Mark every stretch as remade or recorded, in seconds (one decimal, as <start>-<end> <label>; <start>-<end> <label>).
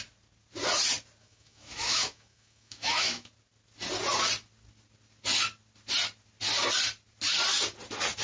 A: 0.0-1.2 recorded; 1.2-3.3 remade; 3.3-8.2 recorded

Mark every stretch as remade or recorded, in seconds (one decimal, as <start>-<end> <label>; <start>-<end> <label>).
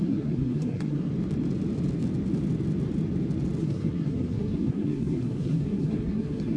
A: 0.0-1.1 remade; 1.1-3.6 recorded; 3.6-6.6 remade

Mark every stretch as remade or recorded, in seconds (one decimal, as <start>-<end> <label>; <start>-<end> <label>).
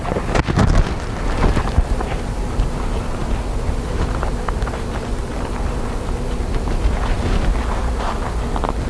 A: 0.0-8.9 recorded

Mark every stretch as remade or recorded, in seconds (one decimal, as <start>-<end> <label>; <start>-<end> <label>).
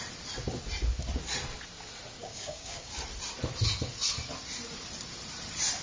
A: 0.0-2.2 recorded; 2.2-2.9 remade; 2.9-5.8 recorded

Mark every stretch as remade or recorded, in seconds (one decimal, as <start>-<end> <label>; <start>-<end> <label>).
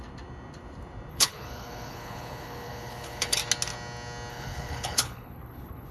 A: 0.0-1.1 recorded; 1.1-3.4 remade; 3.4-4.3 recorded; 4.3-5.9 remade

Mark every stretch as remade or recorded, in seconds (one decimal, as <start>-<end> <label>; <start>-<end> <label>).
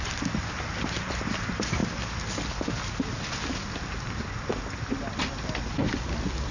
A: 0.0-6.5 recorded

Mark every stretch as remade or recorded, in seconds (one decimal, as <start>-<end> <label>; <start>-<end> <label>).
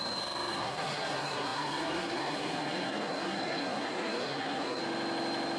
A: 0.0-4.8 remade; 4.8-5.6 recorded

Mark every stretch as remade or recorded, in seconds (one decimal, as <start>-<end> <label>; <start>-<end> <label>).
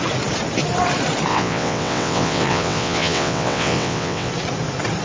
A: 0.0-1.3 recorded; 1.3-4.3 remade; 4.3-5.0 recorded